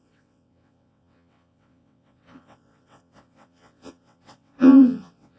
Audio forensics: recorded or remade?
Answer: remade